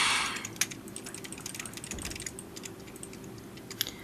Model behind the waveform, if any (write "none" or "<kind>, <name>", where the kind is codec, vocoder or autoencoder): none